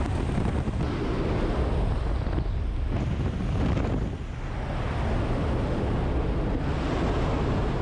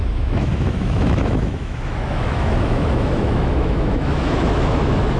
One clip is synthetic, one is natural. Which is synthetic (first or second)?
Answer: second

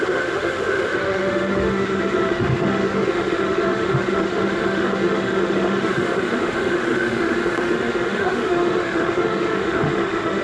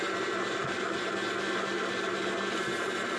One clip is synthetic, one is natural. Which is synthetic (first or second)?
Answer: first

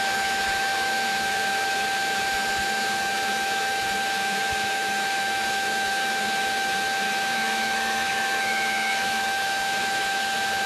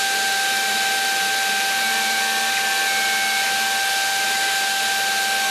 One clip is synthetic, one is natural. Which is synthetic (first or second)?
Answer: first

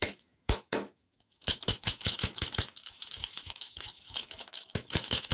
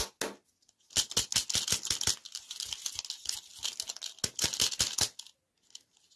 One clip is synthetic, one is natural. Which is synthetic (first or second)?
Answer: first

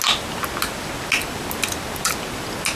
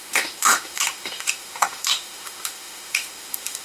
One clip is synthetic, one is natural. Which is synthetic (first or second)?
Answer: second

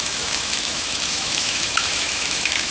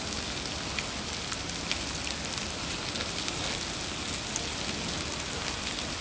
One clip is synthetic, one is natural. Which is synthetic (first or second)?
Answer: first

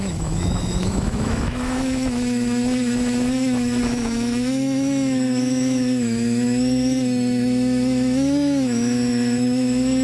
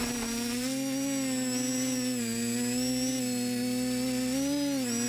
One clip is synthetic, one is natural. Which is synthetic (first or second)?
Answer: first